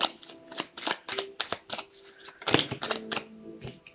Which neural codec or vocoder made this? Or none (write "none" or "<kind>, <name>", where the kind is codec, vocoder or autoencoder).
none